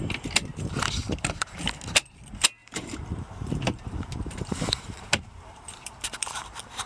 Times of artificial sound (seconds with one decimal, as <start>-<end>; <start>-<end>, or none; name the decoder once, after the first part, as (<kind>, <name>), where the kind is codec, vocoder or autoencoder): 1.0-1.6 (vocoder, BigVGAN v2); 2.6-6.9

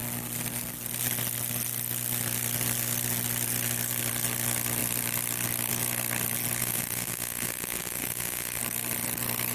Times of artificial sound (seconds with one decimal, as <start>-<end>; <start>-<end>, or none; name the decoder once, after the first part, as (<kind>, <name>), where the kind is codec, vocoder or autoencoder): 6.6-8.6 (autoencoder, DAC-VAE)

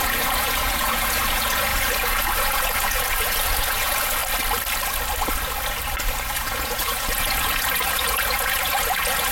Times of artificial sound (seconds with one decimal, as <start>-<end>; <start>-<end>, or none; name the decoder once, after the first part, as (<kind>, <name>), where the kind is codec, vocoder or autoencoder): 0.0-4.2 (vocoder, Vocos); 6.2-9.3

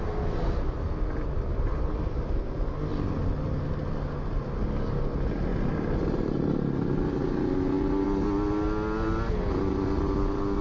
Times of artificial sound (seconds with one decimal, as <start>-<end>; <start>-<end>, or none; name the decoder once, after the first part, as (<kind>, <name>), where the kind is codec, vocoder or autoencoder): 3.8-4.5 (vocoder, BigVGAN v2)